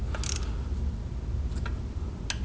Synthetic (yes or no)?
no